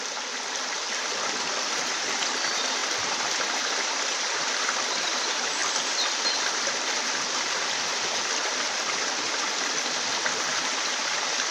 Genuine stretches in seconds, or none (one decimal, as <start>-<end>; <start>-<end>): 0.0-11.5